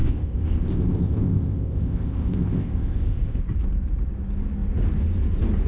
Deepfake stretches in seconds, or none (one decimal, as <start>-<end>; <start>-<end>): 0.0-3.4